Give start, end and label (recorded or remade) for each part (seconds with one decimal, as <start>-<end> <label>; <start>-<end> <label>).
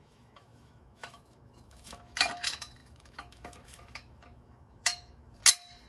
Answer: 0.0-5.4 remade; 5.4-5.9 recorded